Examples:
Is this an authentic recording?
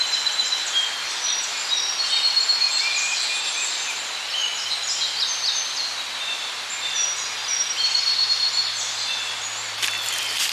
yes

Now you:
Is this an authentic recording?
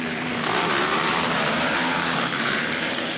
no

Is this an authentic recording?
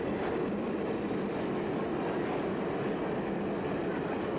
yes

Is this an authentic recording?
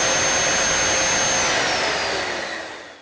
yes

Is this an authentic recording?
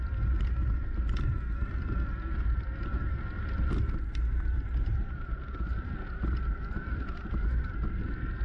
yes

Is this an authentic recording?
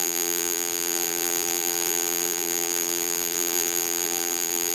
no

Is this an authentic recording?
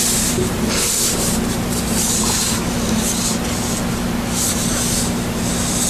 yes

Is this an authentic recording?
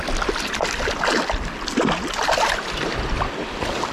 yes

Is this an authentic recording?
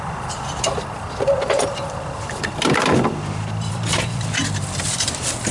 no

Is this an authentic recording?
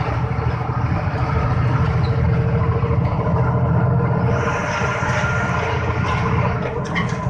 yes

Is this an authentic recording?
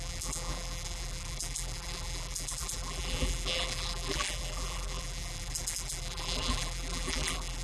no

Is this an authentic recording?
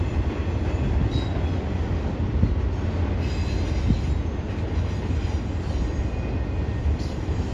yes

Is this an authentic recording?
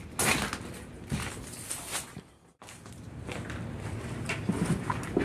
yes